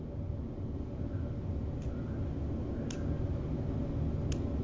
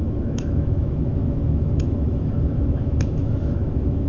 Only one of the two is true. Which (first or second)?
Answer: first